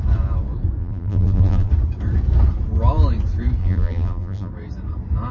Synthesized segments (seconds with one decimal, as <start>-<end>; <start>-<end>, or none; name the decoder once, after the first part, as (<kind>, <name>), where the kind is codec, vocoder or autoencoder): 0.8-1.7 (vocoder, BigVGAN v2); 3.6-4.5